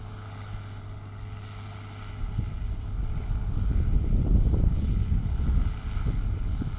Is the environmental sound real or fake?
real